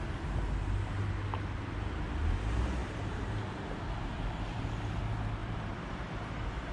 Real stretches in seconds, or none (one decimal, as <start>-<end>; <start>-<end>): 0.0-2.8; 5.0-5.4; 6.3-6.7